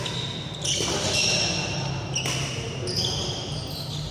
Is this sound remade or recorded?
recorded